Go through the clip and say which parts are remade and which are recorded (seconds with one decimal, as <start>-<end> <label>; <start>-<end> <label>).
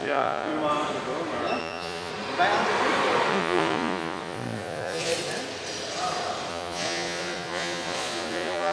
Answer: 0.0-0.5 remade; 0.5-1.6 recorded; 1.6-2.1 remade; 2.1-3.3 recorded; 3.3-5.1 remade; 5.1-6.5 recorded; 6.5-8.7 remade